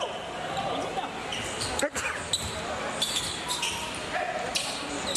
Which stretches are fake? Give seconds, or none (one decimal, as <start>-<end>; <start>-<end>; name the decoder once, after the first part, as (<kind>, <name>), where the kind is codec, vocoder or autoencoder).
none